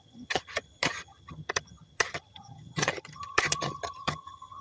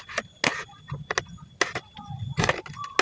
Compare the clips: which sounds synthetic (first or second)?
first